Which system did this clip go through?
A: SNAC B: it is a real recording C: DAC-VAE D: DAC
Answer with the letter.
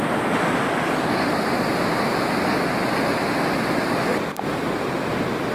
B